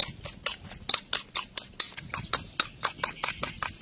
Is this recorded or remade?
recorded